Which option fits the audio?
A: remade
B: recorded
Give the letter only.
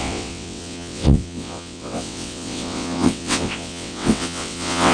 A